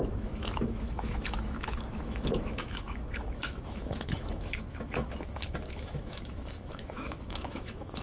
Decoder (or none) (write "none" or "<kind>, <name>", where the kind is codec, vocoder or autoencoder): autoencoder, DAC-VAE